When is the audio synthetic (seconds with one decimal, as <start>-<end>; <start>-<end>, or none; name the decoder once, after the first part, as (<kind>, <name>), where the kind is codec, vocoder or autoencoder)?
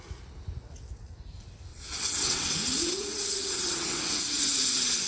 1.7-5.1 (vocoder, WaveNeXt)